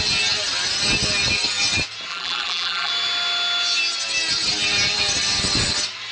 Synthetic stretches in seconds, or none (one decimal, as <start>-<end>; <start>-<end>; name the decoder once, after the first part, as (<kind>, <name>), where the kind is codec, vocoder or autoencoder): 2.1-2.9 (vocoder, BigVGAN v2)